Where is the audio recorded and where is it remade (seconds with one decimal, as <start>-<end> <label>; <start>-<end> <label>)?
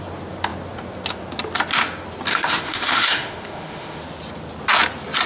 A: 0.0-2.3 recorded; 2.3-4.0 remade; 4.0-5.3 recorded